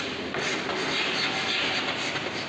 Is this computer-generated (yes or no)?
no